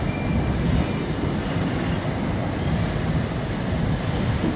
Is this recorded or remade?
recorded